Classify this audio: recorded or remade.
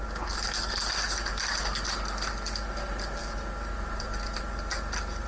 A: recorded